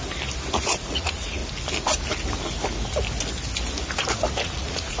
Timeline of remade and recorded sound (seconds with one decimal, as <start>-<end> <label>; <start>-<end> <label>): 0.0-0.5 recorded; 0.5-1.4 remade; 1.4-4.4 recorded; 4.4-5.0 remade